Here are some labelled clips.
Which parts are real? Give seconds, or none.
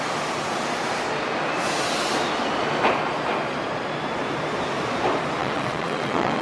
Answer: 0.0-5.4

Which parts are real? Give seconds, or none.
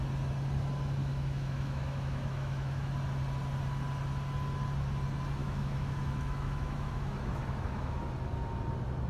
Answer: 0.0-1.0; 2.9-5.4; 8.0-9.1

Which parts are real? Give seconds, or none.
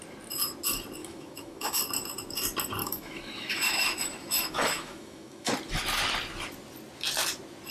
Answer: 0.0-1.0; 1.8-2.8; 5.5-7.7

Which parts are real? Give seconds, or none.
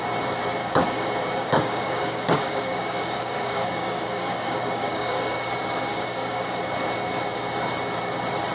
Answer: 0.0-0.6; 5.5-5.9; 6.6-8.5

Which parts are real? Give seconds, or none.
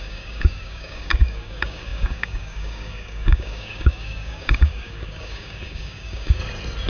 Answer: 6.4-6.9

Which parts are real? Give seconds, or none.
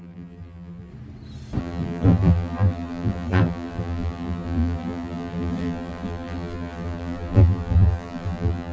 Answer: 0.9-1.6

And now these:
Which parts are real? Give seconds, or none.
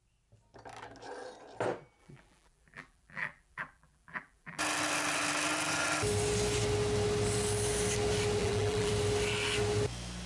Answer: 0.0-2.0; 4.6-8.4; 8.9-10.3